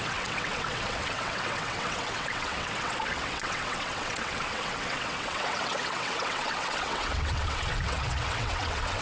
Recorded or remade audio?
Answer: remade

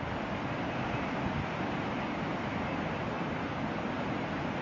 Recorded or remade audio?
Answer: recorded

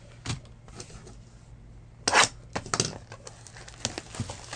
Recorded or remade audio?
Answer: recorded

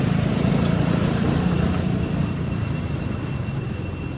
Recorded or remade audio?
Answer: recorded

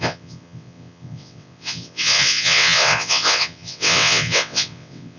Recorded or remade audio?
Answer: remade